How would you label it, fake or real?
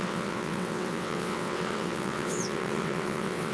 fake